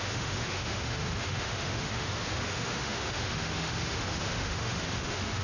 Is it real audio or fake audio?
fake